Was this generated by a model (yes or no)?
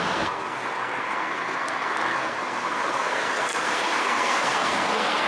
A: yes